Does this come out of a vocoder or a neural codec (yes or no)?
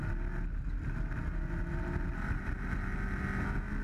no